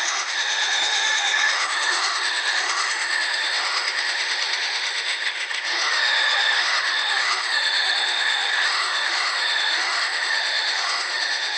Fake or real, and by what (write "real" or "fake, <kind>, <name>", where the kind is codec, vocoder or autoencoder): fake, autoencoder, DAC-VAE